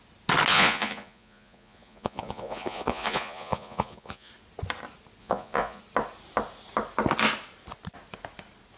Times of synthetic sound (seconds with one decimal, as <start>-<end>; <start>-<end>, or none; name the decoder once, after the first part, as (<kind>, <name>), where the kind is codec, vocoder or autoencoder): 0.5-4.3 (vocoder, Vocos); 5.2-5.8